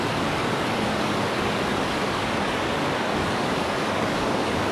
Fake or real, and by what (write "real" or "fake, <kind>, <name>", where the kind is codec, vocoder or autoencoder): fake, codec, DAC